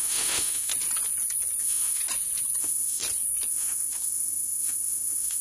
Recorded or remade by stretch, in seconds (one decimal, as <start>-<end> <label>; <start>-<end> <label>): 0.0-0.7 remade; 0.7-1.6 recorded; 1.6-2.0 remade; 2.0-2.6 recorded; 2.6-3.0 remade; 3.0-3.5 recorded; 3.5-5.4 remade